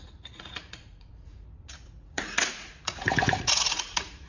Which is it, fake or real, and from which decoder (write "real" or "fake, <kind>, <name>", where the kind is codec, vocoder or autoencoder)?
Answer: fake, vocoder, Vocos